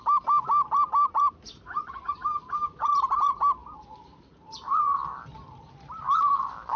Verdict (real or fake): fake